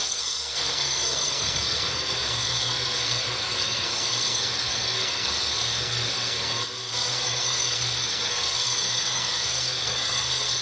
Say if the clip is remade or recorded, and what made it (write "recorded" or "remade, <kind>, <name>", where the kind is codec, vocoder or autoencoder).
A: remade, codec, SNAC